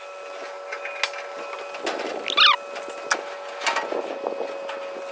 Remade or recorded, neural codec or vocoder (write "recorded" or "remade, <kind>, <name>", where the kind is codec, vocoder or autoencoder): recorded